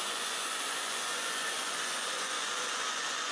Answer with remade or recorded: remade